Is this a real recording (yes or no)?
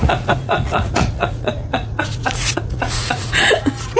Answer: no